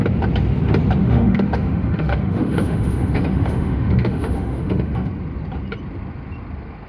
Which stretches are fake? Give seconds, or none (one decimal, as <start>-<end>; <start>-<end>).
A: 1.0-5.1